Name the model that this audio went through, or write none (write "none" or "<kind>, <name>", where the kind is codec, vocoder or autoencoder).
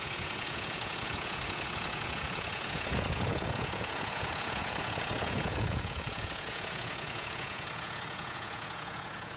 vocoder, Vocos